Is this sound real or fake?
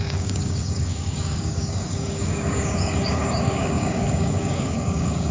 fake